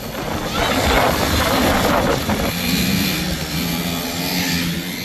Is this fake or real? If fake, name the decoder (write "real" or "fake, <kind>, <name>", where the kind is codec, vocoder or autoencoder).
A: real